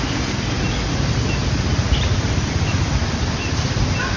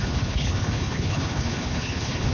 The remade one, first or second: second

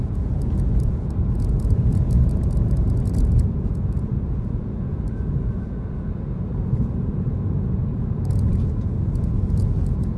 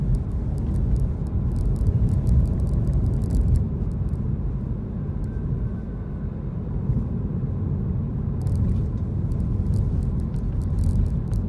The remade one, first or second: first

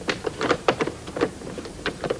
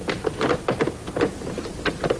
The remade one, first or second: first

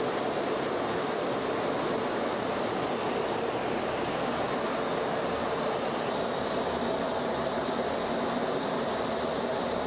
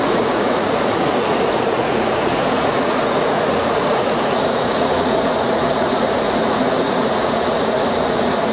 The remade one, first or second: second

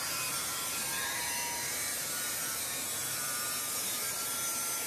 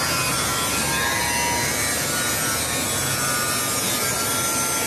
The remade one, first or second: first